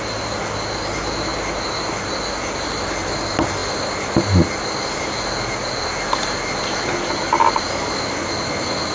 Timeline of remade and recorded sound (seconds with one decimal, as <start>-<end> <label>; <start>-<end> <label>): 0.0-8.9 recorded